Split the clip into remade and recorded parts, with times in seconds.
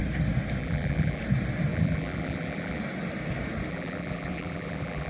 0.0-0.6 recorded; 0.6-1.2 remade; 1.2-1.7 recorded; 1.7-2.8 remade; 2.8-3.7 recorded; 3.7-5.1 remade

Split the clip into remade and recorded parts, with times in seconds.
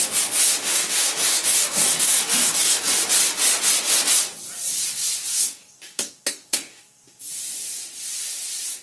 0.0-0.6 recorded; 0.6-2.8 remade; 2.8-5.3 recorded; 5.3-7.3 remade; 7.3-8.8 recorded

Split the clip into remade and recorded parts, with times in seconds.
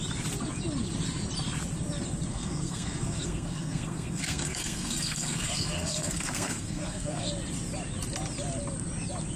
0.0-2.3 recorded; 2.3-7.3 remade; 7.3-9.4 recorded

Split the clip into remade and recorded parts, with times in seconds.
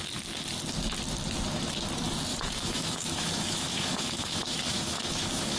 0.0-2.3 recorded; 2.3-5.6 remade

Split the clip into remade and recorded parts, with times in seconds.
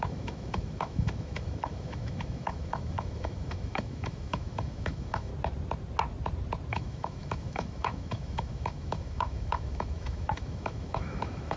0.0-5.3 remade; 5.3-6.7 recorded; 6.7-11.6 remade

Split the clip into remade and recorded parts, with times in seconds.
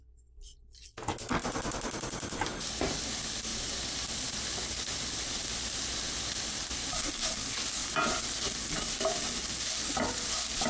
0.0-7.8 recorded; 7.8-8.4 remade; 8.4-10.7 recorded